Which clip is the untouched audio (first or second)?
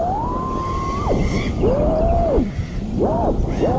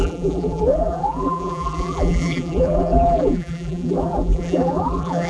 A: first